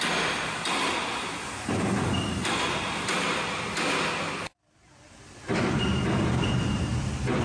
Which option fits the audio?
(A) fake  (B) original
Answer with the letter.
B